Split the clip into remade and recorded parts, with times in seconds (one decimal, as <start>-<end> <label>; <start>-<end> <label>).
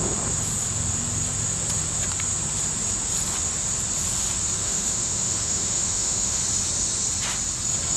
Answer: 0.0-4.6 recorded; 4.6-6.4 remade; 6.4-8.0 recorded